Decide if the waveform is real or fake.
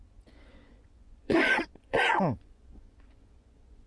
fake